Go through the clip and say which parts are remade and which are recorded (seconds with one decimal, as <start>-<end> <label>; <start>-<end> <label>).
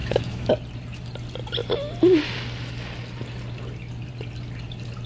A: 0.0-0.5 remade; 0.5-5.1 recorded